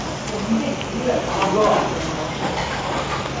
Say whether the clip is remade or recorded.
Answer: recorded